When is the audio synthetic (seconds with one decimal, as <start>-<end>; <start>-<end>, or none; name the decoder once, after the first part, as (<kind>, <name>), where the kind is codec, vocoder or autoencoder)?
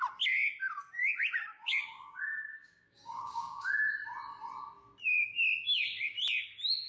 1.5-3.7 (codec, DAC)